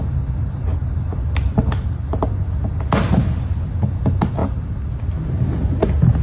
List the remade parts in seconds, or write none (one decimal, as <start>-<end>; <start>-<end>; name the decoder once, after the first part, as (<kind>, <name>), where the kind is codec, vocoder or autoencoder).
none